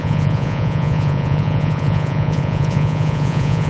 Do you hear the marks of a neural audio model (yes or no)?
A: yes